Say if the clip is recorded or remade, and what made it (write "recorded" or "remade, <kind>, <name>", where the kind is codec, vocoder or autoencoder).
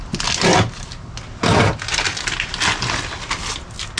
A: recorded